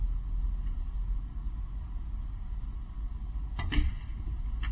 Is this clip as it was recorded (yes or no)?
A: yes